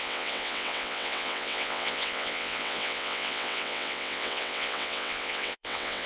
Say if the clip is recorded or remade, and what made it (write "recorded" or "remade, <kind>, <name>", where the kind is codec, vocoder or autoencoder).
remade, vocoder, WaveNeXt